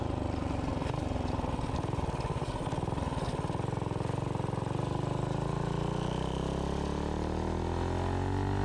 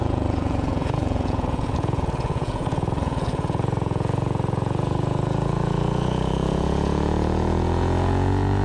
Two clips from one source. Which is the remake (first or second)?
second